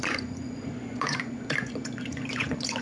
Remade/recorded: remade